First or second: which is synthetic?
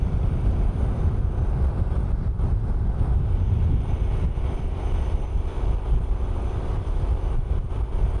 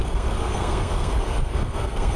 second